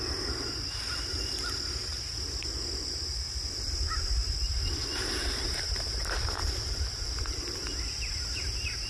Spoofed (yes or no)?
no